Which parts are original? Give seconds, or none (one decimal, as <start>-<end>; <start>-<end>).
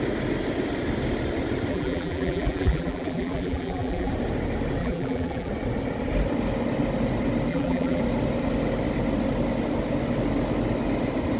0.0-1.7; 4.1-4.8; 5.5-7.5; 8.0-11.4